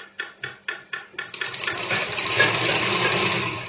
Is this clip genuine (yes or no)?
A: yes